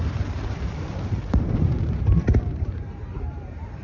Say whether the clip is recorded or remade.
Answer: remade